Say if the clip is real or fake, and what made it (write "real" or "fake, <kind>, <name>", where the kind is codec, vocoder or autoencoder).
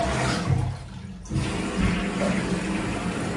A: real